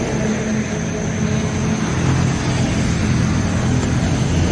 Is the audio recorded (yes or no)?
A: yes